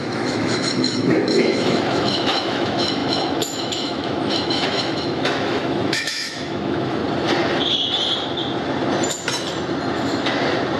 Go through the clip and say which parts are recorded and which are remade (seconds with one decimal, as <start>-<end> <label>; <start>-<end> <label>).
0.0-7.0 remade; 7.0-10.8 recorded